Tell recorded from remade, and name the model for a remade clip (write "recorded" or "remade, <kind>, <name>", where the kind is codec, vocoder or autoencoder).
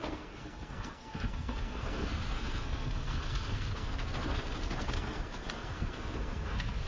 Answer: remade, codec, SNAC